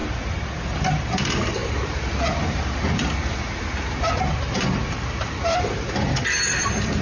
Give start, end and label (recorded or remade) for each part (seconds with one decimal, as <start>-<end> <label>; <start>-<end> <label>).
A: 0.0-0.6 recorded; 0.6-1.6 remade; 1.6-4.4 recorded; 4.4-7.0 remade